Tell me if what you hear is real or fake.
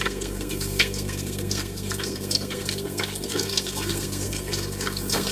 fake